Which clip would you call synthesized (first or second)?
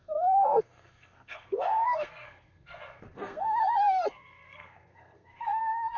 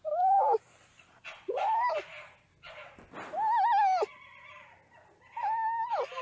first